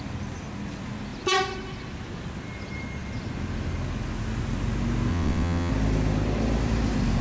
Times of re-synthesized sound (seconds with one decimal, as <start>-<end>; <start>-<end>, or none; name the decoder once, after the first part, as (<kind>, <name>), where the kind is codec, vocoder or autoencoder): 5.1-5.7 (vocoder, WaveNeXt)